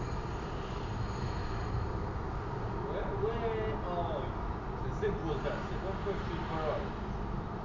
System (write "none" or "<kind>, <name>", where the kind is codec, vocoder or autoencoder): none